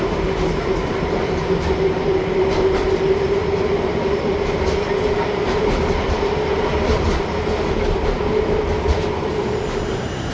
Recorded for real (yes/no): no